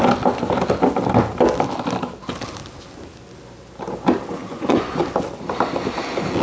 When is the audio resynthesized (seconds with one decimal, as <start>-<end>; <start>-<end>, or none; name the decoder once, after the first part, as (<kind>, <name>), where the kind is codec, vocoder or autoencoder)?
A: 4.4-5.0 (vocoder, Vocos)